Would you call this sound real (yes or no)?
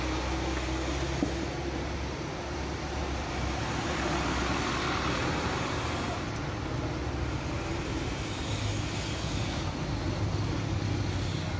yes